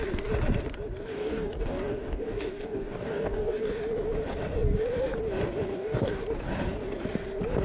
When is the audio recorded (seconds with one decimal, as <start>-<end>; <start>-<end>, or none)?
0.0-1.1; 3.7-5.7; 6.2-7.6

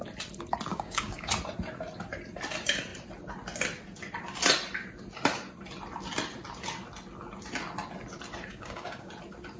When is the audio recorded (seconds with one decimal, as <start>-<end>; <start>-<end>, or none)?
0.0-0.7; 1.3-8.5; 9.1-9.6

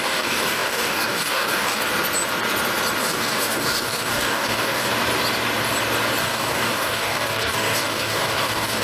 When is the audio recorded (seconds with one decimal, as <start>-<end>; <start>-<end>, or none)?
1.9-3.0; 4.9-6.2

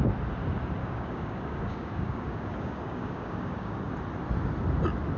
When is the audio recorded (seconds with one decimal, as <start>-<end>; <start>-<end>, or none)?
0.0-0.8; 3.9-5.2

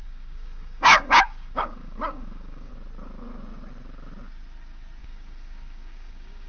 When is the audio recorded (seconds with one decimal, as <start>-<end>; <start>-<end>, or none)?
2.7-5.0

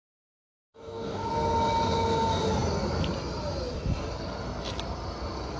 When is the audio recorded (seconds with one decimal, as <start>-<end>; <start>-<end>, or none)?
0.0-0.5; 1.3-5.6

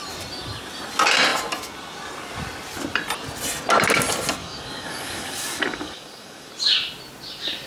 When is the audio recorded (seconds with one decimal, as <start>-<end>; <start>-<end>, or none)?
0.0-4.4; 6.5-7.7